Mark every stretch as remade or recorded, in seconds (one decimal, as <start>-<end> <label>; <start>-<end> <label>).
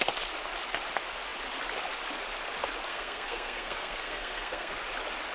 0.0-2.9 recorded; 2.9-4.7 remade; 4.7-5.3 recorded